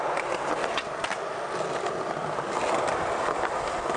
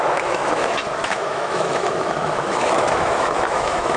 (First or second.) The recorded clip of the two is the first